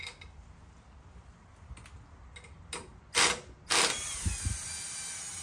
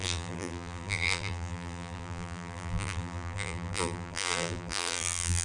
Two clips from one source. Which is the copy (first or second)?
second